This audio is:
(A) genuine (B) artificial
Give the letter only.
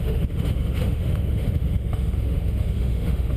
B